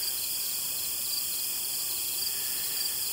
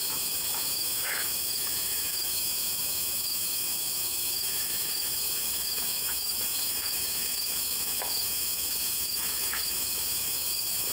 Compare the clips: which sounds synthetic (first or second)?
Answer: second